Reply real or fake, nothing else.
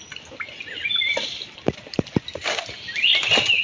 real